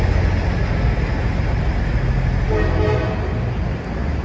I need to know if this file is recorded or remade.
recorded